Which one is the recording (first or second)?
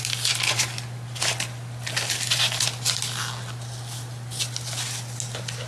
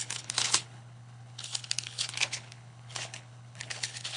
first